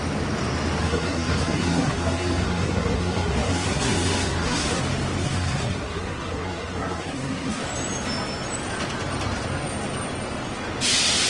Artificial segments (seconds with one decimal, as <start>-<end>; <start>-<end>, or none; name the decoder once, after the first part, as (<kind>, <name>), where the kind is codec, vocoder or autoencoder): 0.8-4.8 (codec, SNAC); 5.2-7.6